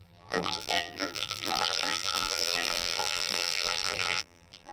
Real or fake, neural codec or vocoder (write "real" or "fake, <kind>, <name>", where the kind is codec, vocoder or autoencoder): fake, vocoder, BigVGAN v2